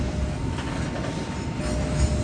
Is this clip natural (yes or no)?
yes